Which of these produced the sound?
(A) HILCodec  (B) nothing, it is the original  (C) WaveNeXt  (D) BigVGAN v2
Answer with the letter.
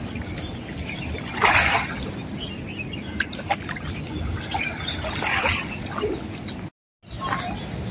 B